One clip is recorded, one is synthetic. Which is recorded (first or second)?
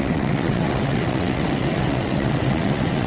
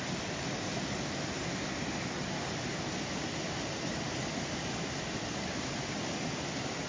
second